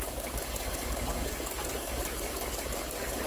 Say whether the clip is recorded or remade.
remade